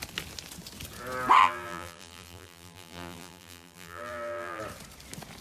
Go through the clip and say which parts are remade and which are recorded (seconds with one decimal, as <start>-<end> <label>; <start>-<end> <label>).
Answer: 0.0-1.4 recorded; 1.4-4.6 remade; 4.6-5.4 recorded

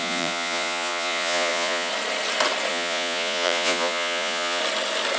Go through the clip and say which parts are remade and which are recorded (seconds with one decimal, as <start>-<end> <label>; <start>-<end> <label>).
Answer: 0.0-1.9 remade; 1.9-2.7 recorded; 2.7-4.6 remade; 4.6-5.2 recorded